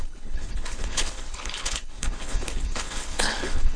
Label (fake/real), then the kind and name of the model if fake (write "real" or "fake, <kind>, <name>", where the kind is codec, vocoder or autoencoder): fake, codec, HILCodec